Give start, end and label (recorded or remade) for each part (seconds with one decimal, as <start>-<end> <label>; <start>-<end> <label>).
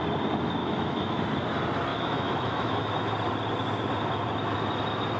0.0-0.6 recorded; 0.6-1.2 remade; 1.2-1.9 recorded; 1.9-3.1 remade; 3.1-5.2 recorded